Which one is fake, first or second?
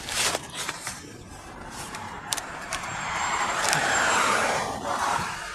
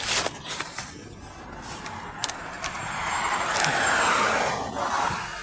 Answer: first